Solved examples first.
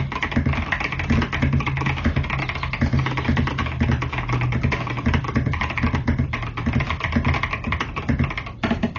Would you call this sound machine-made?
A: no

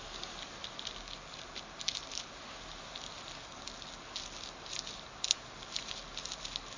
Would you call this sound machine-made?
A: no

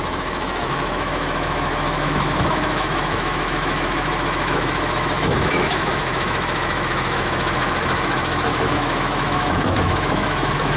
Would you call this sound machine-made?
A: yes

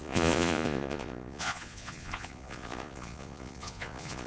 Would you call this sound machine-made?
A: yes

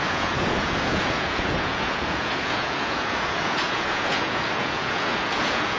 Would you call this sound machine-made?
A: yes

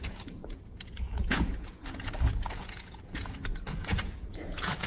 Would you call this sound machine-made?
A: yes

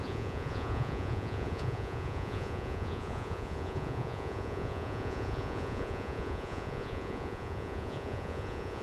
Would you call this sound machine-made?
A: yes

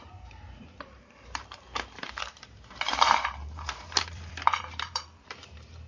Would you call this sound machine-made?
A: yes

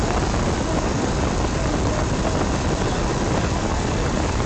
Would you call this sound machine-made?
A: no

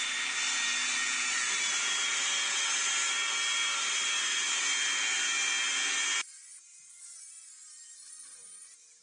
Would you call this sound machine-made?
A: no